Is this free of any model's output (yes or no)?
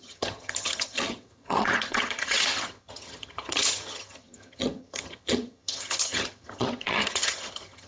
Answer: no